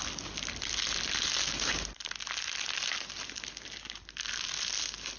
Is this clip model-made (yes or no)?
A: no